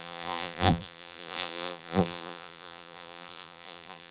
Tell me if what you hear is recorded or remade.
remade